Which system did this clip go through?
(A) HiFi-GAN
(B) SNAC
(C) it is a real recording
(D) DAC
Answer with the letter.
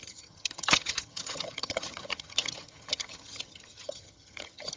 A